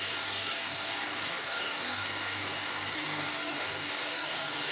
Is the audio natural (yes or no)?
no